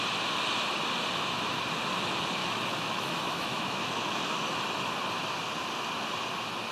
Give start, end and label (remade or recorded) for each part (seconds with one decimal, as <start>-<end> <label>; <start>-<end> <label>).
0.0-2.4 recorded; 2.4-4.8 remade; 4.8-6.7 recorded